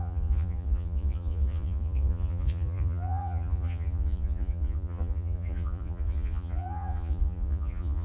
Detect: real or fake fake